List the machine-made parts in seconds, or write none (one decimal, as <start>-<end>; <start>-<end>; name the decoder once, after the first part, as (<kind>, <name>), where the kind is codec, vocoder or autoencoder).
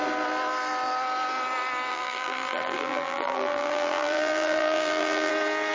1.9-5.3 (vocoder, BigVGAN v2)